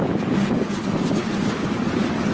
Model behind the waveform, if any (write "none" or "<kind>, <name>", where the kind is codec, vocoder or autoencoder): none